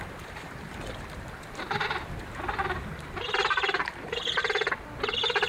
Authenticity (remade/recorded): recorded